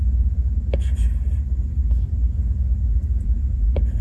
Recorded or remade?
remade